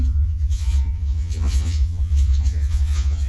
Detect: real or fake fake